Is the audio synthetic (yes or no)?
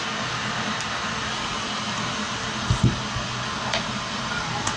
no